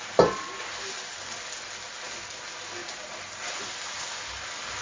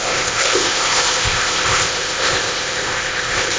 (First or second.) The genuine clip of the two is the first